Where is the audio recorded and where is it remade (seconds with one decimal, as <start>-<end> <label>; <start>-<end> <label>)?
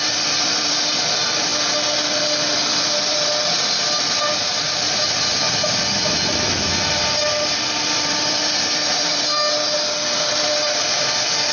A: 0.0-11.5 recorded